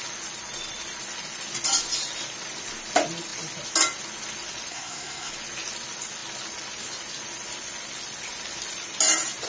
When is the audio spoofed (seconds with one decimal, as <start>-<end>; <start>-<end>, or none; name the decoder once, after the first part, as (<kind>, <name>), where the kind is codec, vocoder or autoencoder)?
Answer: 4.7-5.3 (codec, SNAC)